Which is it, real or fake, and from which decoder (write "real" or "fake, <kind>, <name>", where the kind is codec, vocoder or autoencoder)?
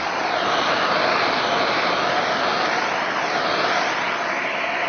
real